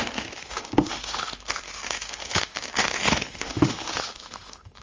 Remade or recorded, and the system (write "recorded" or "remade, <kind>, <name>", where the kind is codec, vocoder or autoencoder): remade, autoencoder, DAC-VAE